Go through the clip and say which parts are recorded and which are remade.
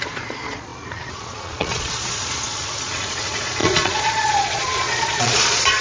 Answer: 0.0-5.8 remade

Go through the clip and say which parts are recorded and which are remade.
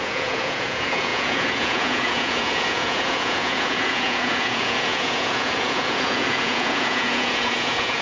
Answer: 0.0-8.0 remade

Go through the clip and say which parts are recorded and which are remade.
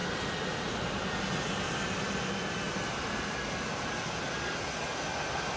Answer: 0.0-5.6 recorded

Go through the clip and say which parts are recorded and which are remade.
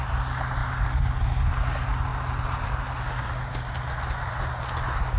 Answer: 0.0-5.2 recorded